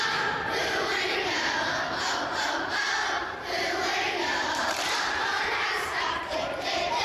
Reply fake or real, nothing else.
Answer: fake